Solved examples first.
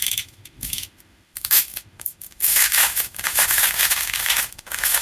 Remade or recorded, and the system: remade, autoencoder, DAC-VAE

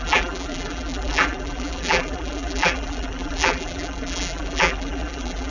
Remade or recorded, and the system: remade, vocoder, BigVGAN v2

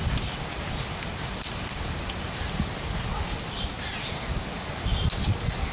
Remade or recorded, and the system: recorded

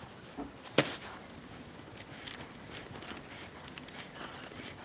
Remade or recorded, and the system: recorded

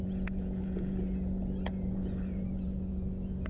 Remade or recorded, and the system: remade, vocoder, Vocos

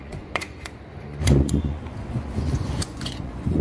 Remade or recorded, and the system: remade, vocoder, Vocos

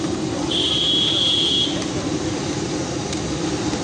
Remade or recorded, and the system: recorded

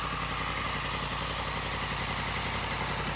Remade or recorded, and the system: recorded